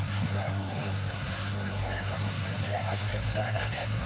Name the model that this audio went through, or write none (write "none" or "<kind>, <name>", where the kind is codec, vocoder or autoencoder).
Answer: codec, SNAC